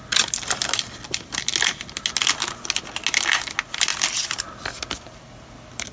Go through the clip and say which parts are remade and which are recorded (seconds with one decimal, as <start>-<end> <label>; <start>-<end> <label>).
0.0-5.9 recorded